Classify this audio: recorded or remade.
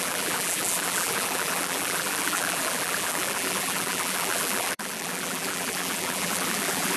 remade